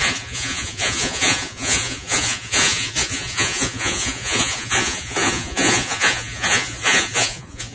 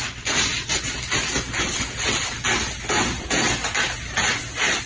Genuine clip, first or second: second